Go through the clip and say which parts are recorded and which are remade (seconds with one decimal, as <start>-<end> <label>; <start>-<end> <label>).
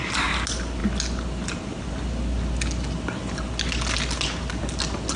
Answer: 0.0-5.2 recorded